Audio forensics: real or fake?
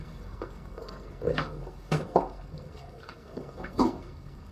fake